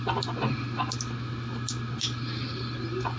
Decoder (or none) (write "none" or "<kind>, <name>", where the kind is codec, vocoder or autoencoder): none